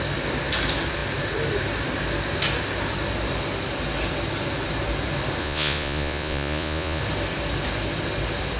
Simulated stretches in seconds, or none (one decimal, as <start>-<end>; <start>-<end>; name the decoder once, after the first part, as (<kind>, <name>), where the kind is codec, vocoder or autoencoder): 5.4-7.0 (vocoder, Vocos)